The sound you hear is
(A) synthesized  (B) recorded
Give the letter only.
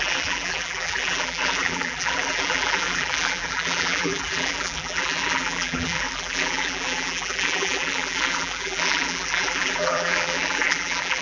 A